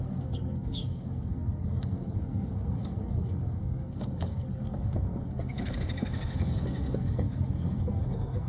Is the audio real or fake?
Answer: fake